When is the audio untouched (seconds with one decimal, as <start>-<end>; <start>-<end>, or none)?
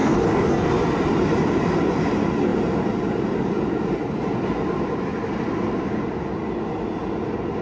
0.7-7.6